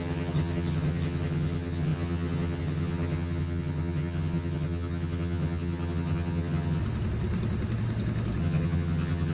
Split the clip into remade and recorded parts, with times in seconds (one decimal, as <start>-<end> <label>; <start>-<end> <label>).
0.0-6.8 remade; 6.8-8.4 recorded; 8.4-9.3 remade